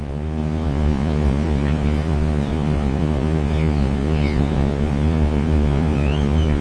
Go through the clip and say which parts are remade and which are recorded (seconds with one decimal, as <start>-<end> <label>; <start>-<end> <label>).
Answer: 0.0-6.6 remade

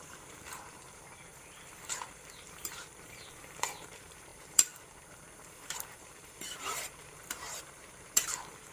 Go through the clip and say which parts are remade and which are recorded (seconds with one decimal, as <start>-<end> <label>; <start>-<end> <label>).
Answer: 0.0-8.7 remade

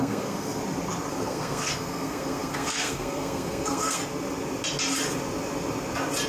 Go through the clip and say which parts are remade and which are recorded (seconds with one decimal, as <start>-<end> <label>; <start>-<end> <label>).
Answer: 0.0-0.6 remade; 0.6-1.1 recorded; 1.1-4.0 remade; 4.0-6.3 recorded

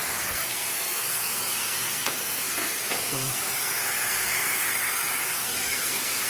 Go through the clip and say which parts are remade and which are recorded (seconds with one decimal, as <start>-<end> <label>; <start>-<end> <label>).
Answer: 0.0-6.3 remade

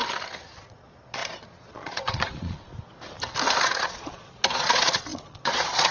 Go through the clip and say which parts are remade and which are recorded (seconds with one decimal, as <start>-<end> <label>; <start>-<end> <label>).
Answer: 0.0-0.6 recorded; 0.6-2.7 remade; 2.7-3.6 recorded; 3.6-5.9 remade